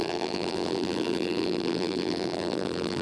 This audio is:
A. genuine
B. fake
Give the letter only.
B